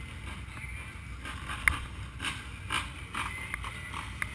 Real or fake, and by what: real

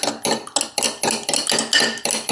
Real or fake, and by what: real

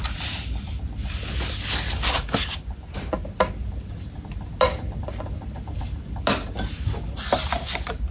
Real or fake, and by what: real